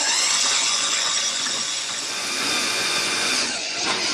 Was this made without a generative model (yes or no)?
no